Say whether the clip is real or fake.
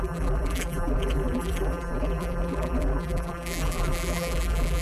fake